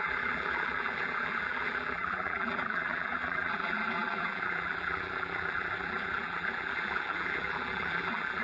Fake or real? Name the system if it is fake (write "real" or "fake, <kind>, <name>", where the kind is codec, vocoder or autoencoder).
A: fake, vocoder, BigVGAN v2